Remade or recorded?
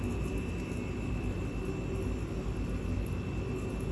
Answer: recorded